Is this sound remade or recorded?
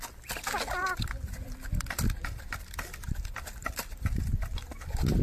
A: remade